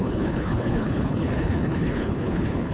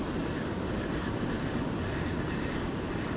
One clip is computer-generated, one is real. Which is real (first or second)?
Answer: second